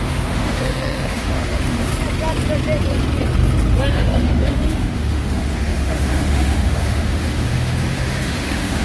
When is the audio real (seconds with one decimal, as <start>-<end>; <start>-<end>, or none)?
1.9-3.9